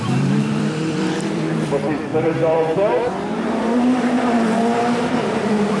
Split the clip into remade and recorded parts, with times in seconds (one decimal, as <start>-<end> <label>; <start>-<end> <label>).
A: 0.0-5.8 remade